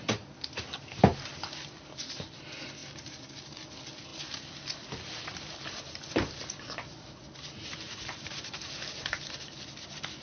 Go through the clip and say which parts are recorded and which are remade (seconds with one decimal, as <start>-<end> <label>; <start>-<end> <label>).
0.0-2.8 recorded; 2.8-3.3 remade; 3.3-10.2 recorded